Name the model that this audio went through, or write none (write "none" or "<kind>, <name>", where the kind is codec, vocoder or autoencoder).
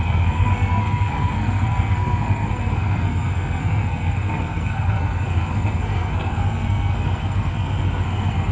codec, SNAC